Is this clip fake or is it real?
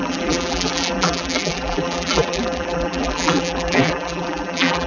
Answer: fake